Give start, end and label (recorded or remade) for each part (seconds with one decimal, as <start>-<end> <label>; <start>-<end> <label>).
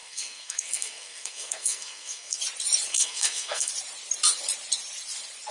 0.0-2.4 remade; 2.4-2.9 recorded; 2.9-3.7 remade; 3.7-5.5 recorded